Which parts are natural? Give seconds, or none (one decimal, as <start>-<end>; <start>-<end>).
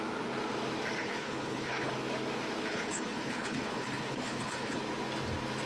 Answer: 0.0-1.0; 1.9-2.7; 4.8-5.7